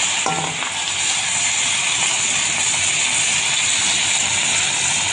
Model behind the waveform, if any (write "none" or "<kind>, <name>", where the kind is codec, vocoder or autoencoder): none